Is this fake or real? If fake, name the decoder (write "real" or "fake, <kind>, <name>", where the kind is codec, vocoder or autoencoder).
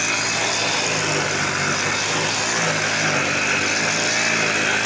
real